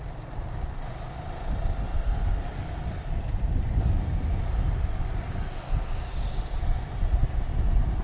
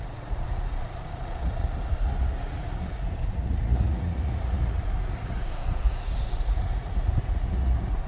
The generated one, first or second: second